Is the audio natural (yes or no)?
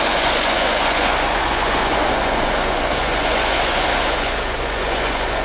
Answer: no